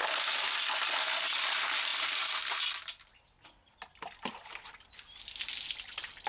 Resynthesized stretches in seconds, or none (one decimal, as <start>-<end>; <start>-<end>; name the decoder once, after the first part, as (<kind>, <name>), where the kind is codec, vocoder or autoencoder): none